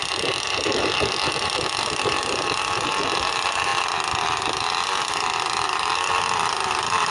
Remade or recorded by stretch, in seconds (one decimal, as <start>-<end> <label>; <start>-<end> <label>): 0.0-7.1 recorded